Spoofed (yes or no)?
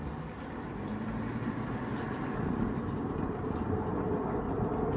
no